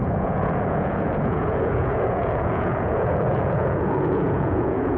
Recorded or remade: remade